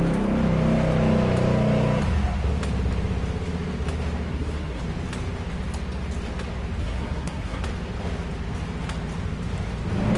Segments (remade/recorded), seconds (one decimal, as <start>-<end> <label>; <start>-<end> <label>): 0.0-4.3 recorded; 4.3-4.8 remade; 4.8-6.8 recorded; 6.8-7.6 remade; 7.6-10.2 recorded